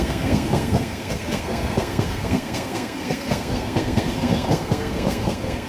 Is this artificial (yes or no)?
yes